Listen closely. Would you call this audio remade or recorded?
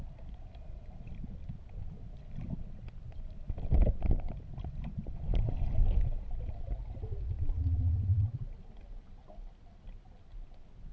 recorded